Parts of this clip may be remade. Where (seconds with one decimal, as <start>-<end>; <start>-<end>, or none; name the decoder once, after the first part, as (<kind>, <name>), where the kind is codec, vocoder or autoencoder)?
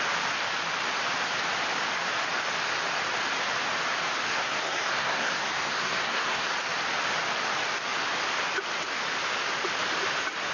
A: 4.3-6.5 (codec, SNAC)